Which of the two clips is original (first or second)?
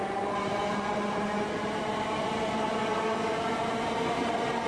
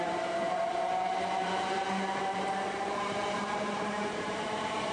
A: first